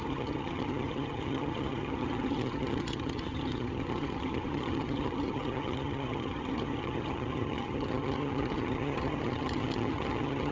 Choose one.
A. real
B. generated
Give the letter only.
B